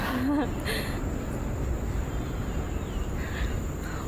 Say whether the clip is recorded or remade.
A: recorded